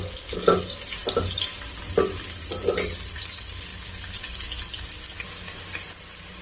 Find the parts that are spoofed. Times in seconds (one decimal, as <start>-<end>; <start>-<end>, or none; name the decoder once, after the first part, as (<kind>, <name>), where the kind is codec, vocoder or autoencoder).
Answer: 1.0-3.3 (vocoder, BigVGAN v2)